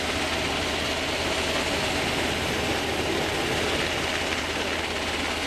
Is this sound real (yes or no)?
yes